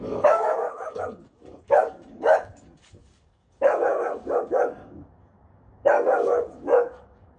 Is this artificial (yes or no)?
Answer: yes